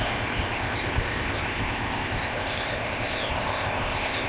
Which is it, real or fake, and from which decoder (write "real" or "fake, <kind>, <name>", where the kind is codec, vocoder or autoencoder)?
fake, codec, ZipCodec